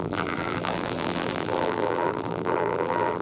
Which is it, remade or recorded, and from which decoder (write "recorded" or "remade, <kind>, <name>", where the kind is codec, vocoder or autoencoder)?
remade, vocoder, BigVGAN v2